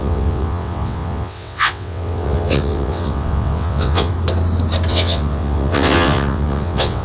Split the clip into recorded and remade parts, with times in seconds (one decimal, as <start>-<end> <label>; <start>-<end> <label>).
0.0-4.1 remade; 4.1-4.9 recorded; 4.9-7.0 remade